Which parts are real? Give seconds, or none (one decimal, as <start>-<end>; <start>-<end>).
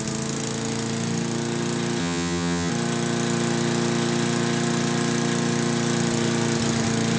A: 0.0-2.0; 2.7-7.2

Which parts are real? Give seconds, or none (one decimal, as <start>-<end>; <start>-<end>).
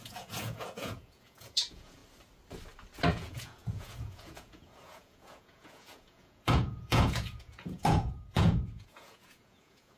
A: 2.0-3.1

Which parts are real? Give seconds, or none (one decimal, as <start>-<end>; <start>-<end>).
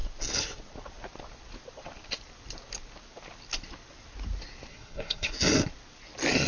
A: 0.0-4.7; 5.3-6.5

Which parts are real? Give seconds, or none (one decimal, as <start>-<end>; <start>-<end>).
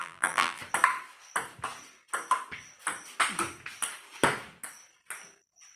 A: 0.6-5.8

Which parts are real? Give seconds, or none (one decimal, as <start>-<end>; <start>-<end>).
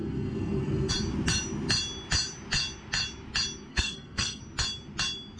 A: 0.9-3.7; 4.4-5.4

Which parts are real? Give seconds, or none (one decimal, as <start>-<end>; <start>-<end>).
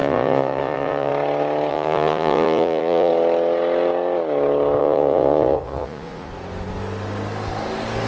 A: 1.1-1.7; 3.1-4.8; 6.3-8.1